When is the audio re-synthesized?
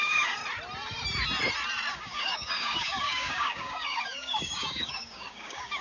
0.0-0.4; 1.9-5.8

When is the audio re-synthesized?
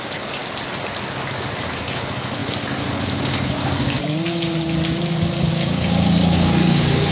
0.0-0.4; 1.6-4.0; 5.5-7.1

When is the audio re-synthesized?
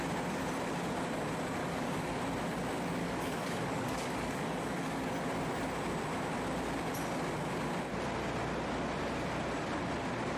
1.6-2.2; 3.0-5.1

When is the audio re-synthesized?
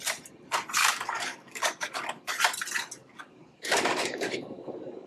0.8-2.3; 3.0-5.1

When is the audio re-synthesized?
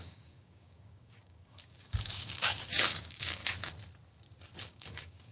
0.0-3.4; 4.6-5.3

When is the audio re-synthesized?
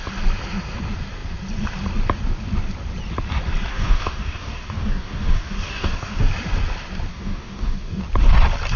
3.7-6.2; 7.1-8.0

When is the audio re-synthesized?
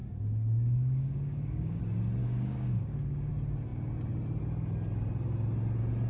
0.0-1.8; 2.2-3.3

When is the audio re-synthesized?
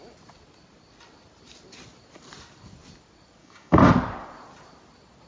3.4-3.9